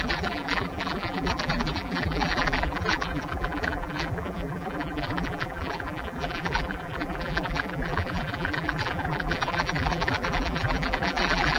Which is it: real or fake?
fake